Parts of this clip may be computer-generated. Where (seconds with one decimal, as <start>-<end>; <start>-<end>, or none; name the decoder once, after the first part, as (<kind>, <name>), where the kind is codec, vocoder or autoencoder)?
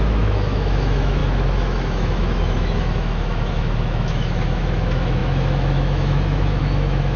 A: 0.0-7.2 (autoencoder, DAC-VAE)